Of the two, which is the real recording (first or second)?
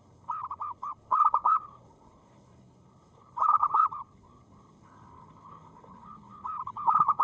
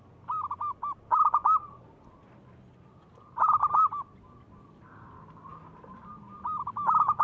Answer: second